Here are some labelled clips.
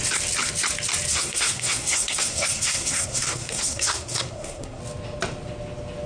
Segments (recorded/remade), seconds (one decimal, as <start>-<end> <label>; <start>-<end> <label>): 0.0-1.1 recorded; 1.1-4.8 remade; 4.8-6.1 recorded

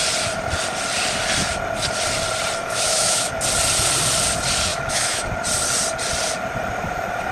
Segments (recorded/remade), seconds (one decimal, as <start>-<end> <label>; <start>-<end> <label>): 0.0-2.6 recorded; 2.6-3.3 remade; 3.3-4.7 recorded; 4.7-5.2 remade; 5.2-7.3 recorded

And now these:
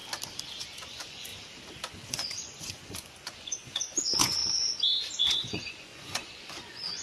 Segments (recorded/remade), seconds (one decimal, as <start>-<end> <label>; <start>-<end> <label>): 0.0-0.6 recorded; 0.6-1.3 remade; 1.3-2.1 recorded; 2.1-4.4 remade; 4.4-5.2 recorded; 5.2-7.0 remade

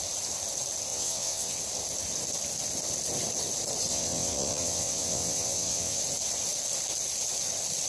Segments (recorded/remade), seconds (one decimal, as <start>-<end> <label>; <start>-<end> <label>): 0.0-0.9 recorded; 0.9-1.6 remade; 1.6-3.9 recorded; 3.9-6.0 remade; 6.0-7.9 recorded

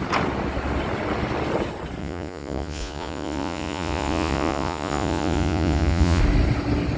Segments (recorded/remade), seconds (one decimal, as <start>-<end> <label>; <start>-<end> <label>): 0.0-2.0 recorded; 2.0-6.2 remade; 6.2-7.0 recorded

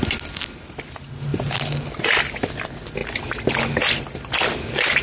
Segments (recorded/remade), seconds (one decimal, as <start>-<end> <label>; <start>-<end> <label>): 0.0-5.0 recorded

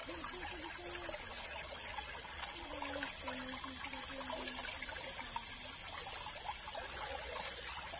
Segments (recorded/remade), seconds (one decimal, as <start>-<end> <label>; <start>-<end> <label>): 0.0-1.3 recorded; 1.3-2.7 remade; 2.7-6.8 recorded; 6.8-8.0 remade

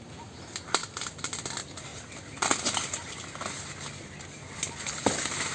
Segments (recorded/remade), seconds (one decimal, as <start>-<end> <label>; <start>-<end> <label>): 0.0-0.8 recorded; 0.8-1.4 remade; 1.4-5.5 recorded